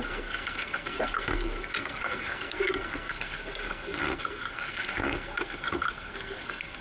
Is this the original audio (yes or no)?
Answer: no